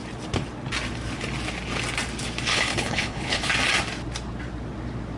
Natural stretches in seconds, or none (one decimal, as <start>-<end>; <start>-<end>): 0.0-2.5; 3.5-5.2